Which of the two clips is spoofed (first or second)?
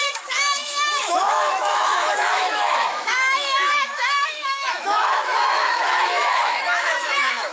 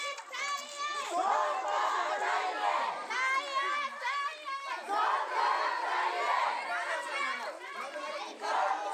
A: first